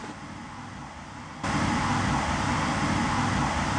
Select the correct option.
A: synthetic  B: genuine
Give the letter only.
B